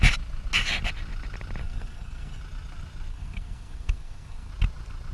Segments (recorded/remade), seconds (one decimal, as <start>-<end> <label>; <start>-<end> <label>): 0.0-1.6 recorded; 1.6-2.4 remade; 2.4-3.1 recorded; 3.1-4.5 remade; 4.5-5.1 recorded